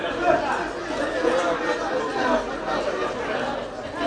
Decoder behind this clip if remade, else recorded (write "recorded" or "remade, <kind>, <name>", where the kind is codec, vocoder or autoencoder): recorded